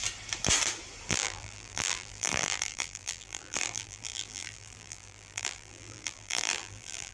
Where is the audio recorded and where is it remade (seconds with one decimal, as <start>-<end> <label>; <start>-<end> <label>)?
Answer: 0.0-1.1 recorded; 1.1-7.1 remade